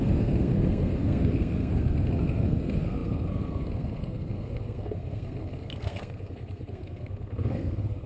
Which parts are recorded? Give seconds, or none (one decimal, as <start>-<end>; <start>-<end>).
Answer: none